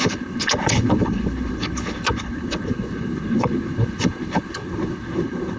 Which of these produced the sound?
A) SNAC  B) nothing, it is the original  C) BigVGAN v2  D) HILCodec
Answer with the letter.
D